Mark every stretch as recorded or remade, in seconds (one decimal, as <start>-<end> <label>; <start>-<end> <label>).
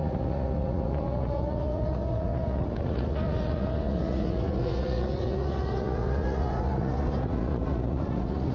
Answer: 0.0-8.5 remade